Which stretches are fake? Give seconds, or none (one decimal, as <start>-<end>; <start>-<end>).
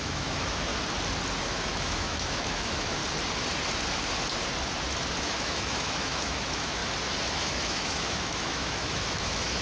0.0-0.7; 1.4-3.0; 5.2-6.8; 7.3-9.6